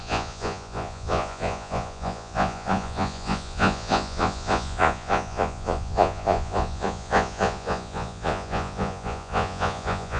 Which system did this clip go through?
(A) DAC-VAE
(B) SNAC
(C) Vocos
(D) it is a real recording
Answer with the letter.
C